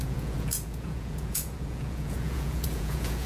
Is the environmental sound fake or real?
fake